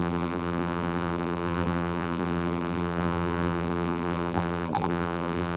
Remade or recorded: remade